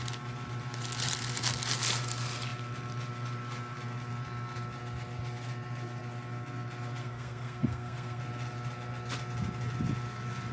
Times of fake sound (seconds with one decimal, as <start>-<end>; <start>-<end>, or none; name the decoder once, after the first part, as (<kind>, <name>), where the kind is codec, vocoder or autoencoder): 7.0-8.2 (codec, SNAC)